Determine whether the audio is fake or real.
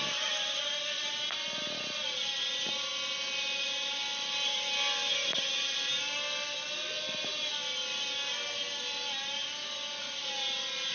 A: real